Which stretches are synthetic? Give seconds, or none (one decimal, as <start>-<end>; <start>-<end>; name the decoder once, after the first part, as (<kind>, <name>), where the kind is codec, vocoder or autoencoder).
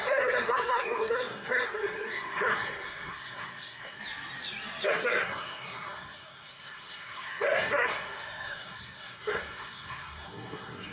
0.0-4.0 (codec, SNAC); 4.9-10.9